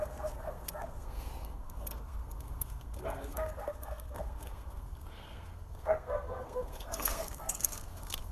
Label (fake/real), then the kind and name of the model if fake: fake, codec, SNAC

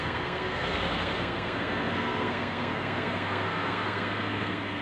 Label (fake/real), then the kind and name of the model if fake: fake, codec, SNAC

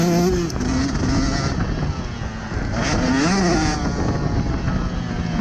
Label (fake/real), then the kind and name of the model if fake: real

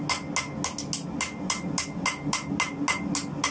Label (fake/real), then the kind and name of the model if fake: real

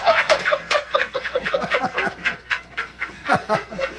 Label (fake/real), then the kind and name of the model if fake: fake, codec, SNAC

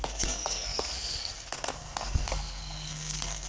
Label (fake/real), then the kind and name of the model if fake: fake, codec, SNAC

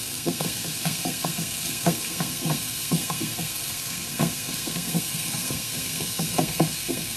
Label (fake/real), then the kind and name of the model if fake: fake, codec, SNAC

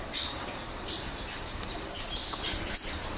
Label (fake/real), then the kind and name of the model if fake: fake, vocoder, BigVGAN v2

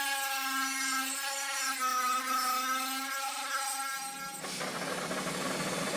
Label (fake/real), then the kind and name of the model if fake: real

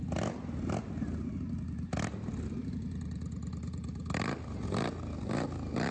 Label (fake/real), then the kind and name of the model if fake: real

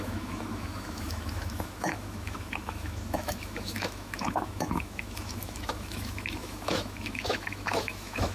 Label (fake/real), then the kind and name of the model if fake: fake, autoencoder, DAC-VAE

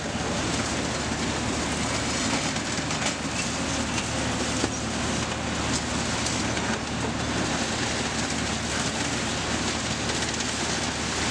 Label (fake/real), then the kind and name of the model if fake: real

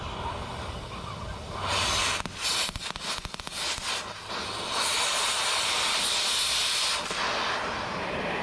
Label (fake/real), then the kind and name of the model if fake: real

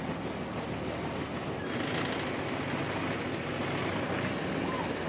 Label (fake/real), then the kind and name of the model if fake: real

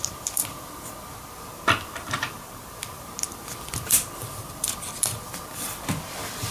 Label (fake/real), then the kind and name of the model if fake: fake, vocoder, BigVGAN v2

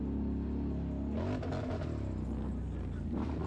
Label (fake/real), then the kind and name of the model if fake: real